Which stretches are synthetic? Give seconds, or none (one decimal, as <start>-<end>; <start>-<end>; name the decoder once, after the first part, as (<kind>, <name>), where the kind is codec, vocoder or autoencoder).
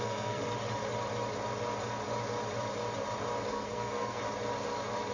0.0-0.4 (codec, SNAC); 3.5-4.2